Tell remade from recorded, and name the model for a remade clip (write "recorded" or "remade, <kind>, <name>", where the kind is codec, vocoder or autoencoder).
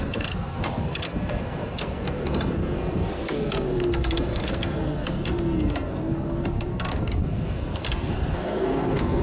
remade, codec, SNAC